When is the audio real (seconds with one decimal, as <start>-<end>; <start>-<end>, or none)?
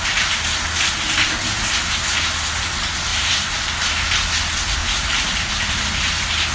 0.0-3.1; 3.7-4.8; 6.0-6.5